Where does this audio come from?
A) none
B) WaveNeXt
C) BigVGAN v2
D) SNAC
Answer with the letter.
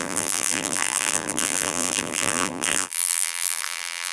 C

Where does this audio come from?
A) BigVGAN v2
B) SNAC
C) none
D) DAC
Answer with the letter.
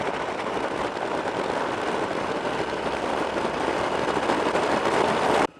C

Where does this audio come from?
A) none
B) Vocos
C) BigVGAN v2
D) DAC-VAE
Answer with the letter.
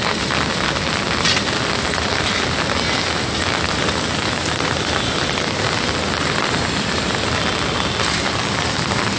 A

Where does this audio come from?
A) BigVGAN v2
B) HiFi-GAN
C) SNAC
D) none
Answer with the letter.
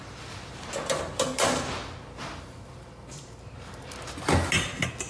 D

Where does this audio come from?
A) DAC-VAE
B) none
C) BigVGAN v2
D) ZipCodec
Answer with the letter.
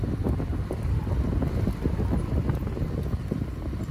B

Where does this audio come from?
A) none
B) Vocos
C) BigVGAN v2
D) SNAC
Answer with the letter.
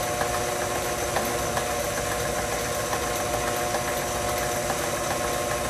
A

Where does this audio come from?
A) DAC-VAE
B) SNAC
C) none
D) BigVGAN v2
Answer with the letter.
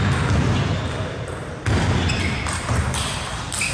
D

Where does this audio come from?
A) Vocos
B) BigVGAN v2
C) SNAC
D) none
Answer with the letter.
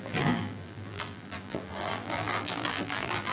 B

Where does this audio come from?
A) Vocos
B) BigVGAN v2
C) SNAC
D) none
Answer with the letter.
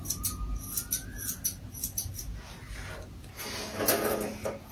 D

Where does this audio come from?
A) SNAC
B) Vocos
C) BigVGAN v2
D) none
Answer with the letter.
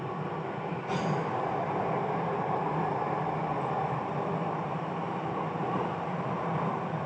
C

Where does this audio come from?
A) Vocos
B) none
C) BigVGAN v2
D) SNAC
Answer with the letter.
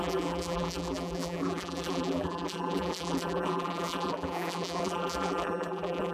C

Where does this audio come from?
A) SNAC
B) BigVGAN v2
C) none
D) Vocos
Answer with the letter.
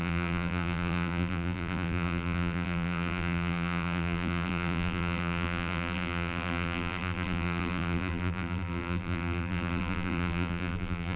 B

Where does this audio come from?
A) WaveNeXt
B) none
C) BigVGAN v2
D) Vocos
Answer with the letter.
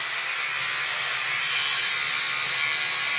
B